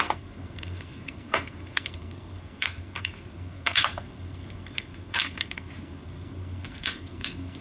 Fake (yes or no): yes